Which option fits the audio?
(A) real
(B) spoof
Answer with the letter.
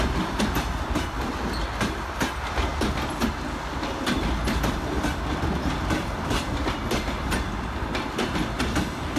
A